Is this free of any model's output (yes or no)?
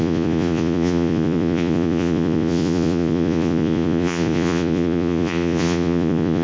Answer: no